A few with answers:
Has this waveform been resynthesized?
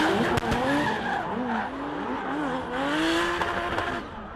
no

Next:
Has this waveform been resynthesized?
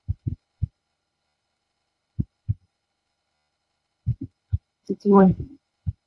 yes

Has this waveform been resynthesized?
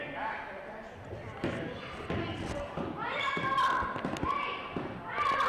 no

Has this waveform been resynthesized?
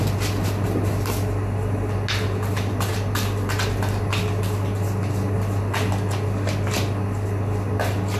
no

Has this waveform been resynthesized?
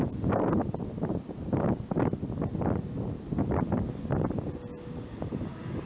no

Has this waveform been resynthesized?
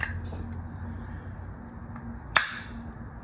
no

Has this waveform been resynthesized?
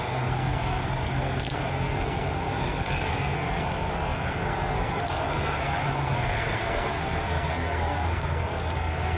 yes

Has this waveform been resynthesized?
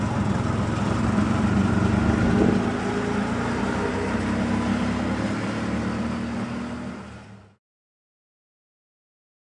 no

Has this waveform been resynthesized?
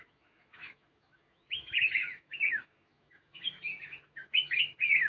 yes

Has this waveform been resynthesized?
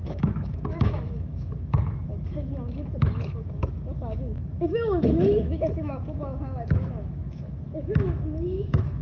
yes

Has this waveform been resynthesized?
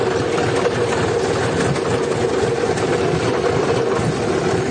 no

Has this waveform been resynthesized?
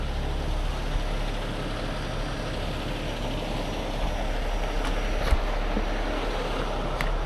no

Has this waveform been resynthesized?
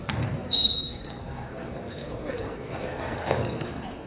yes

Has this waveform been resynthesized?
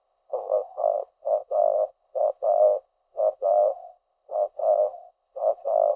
yes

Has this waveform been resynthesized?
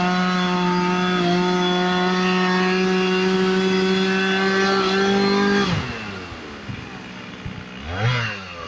no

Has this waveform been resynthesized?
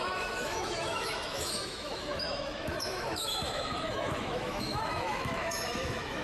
yes